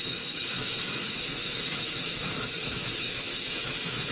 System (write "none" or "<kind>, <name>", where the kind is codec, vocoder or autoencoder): autoencoder, DAC-VAE